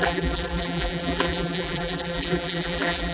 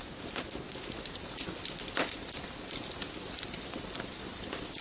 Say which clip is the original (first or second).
second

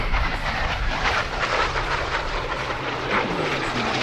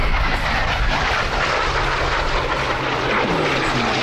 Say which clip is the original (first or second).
second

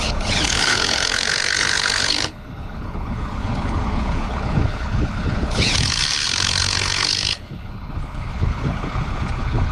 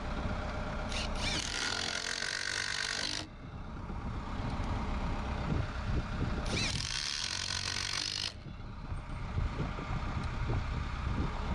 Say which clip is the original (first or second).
second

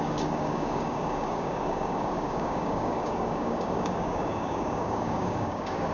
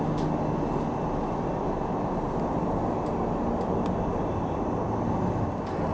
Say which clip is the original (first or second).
second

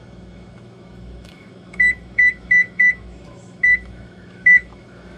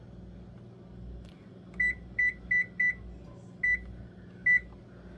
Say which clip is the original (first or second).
second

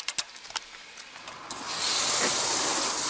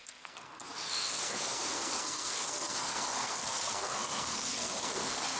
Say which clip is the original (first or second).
first